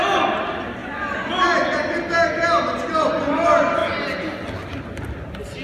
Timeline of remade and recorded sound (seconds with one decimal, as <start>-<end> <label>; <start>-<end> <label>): 0.0-5.6 recorded